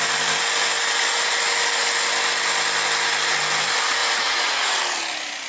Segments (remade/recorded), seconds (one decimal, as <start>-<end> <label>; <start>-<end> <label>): 0.0-4.0 recorded; 4.0-4.8 remade; 4.8-5.5 recorded